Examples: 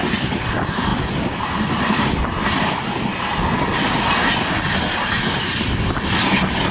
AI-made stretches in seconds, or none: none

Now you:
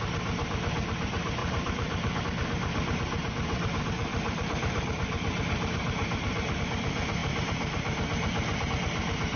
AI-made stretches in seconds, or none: 1.4-2.2 (vocoder, BigVGAN v2); 4.1-6.6